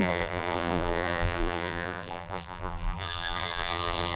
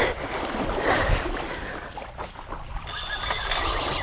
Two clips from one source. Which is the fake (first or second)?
first